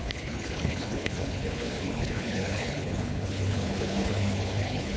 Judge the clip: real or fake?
fake